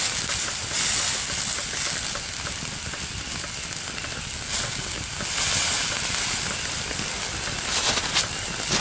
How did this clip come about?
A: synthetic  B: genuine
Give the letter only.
B